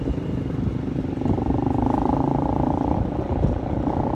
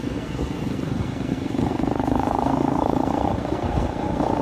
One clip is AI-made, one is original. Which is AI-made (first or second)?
second